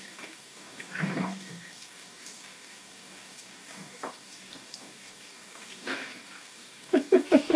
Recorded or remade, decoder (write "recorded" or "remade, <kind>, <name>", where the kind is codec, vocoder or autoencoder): remade, codec, DAC